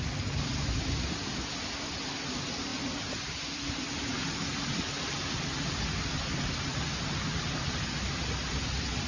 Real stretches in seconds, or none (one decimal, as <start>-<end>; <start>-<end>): 0.0-9.1